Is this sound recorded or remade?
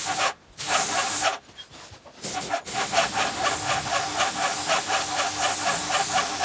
recorded